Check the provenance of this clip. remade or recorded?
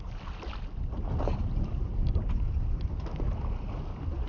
recorded